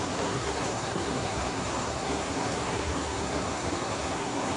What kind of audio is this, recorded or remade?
remade